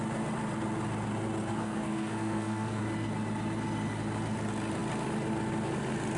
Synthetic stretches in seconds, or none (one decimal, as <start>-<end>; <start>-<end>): 1.5-2.8